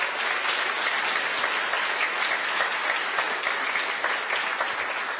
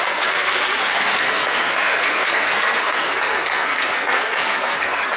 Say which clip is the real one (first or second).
first